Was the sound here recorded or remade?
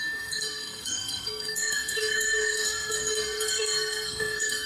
remade